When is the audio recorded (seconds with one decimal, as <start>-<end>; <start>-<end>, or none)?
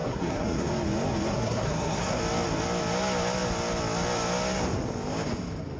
0.7-1.3; 2.2-5.8